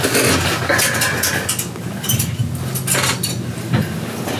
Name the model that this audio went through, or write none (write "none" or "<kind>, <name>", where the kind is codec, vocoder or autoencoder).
none